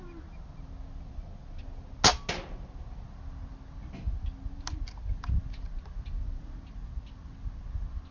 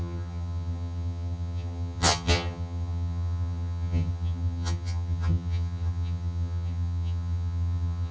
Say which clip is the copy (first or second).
second